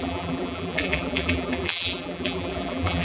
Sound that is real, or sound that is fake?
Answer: fake